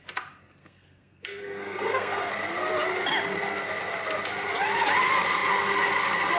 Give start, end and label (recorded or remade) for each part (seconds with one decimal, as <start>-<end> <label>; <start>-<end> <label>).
0.0-0.6 recorded; 0.6-2.3 remade; 2.3-6.4 recorded